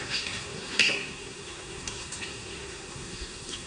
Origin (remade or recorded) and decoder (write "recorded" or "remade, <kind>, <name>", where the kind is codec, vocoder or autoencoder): remade, codec, SNAC